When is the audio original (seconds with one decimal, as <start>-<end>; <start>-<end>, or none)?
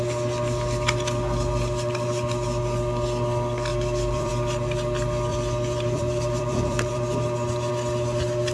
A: 0.0-3.7; 4.3-5.3; 7.7-8.5